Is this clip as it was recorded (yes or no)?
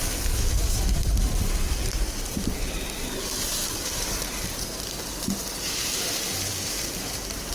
no